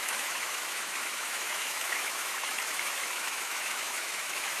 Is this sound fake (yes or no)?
yes